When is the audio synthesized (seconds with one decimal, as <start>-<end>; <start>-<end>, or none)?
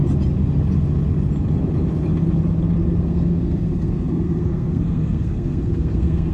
3.0-6.3